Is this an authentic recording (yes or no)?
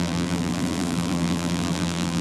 no